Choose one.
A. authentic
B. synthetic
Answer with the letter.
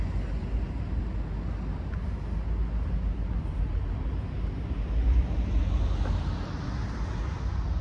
A